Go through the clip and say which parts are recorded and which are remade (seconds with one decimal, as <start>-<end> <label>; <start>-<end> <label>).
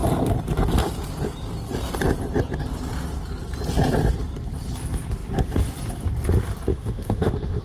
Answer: 0.0-6.7 recorded; 6.7-7.6 remade